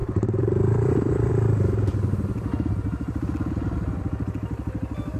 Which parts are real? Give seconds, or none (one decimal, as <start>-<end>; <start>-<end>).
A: 1.3-1.9